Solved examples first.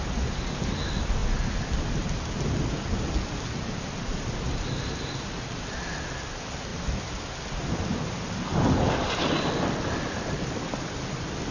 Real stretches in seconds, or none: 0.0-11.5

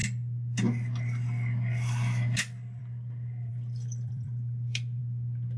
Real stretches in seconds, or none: 0.0-3.5; 5.0-5.6

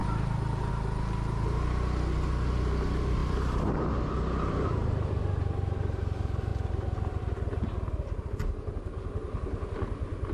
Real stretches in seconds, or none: 0.7-10.3